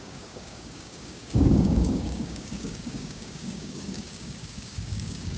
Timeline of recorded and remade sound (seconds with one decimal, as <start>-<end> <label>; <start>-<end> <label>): 0.0-5.4 remade